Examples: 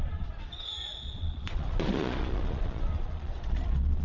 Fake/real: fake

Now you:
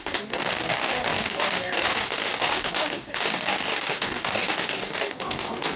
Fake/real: fake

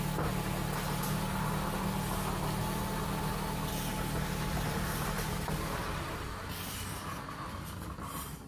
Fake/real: real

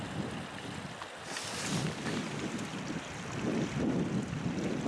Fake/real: real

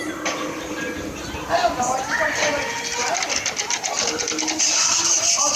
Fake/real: real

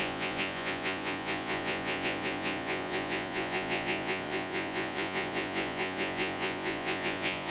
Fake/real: fake